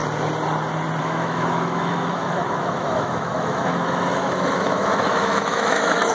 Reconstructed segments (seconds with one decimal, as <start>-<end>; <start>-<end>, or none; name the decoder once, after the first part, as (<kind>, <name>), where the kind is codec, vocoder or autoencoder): 1.0-6.1 (autoencoder, DAC-VAE)

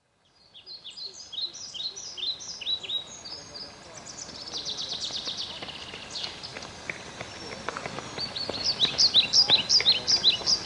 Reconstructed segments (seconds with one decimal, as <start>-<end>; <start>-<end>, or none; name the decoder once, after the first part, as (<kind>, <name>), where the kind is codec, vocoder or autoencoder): none

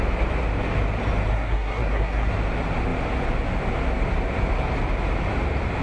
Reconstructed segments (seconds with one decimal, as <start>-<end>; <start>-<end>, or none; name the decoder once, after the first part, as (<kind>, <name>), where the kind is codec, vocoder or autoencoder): 1.3-2.3 (codec, SNAC)

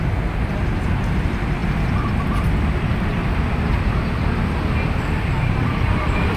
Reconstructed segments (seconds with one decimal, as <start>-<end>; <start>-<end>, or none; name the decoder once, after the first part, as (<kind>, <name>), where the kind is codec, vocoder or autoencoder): none